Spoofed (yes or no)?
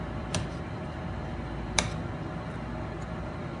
yes